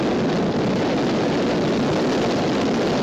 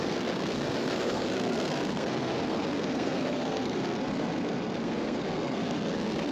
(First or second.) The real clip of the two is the first